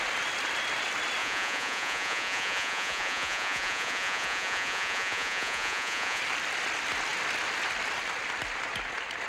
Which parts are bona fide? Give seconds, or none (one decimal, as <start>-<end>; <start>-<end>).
0.0-1.2; 6.2-9.3